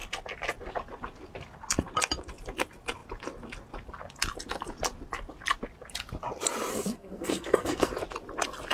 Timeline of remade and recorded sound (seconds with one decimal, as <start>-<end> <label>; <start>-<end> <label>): 0.0-6.7 recorded; 6.7-7.9 remade; 7.9-8.7 recorded